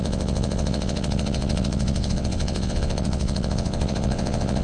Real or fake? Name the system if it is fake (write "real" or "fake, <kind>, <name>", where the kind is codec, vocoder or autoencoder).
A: fake, vocoder, WaveNeXt